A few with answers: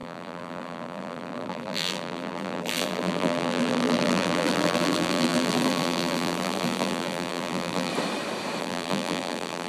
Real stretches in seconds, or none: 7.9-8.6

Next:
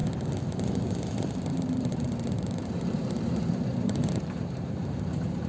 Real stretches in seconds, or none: 0.0-1.3

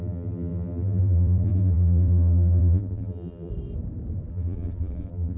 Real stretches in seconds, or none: 3.5-4.3

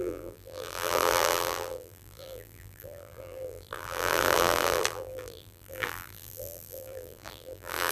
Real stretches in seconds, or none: none

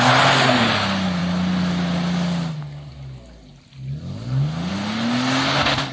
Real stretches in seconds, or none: 0.0-5.9

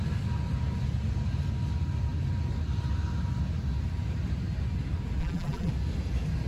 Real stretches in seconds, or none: 0.0-5.2; 5.7-6.5